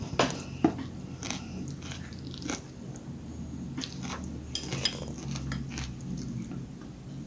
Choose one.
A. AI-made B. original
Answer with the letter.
B